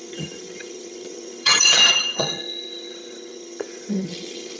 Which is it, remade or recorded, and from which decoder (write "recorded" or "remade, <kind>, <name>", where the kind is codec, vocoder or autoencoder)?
remade, vocoder, HiFi-GAN